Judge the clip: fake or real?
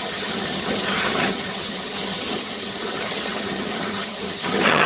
fake